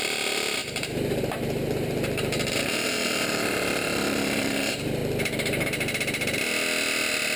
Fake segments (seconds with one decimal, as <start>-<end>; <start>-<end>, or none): 0.0-5.0